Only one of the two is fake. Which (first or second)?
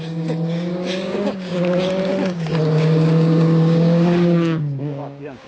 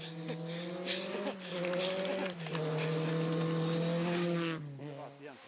first